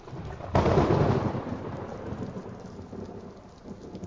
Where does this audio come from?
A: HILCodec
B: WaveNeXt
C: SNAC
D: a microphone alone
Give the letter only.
D